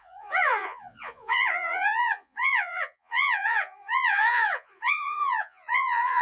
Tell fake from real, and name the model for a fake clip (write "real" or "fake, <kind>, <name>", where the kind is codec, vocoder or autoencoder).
fake, vocoder, Vocos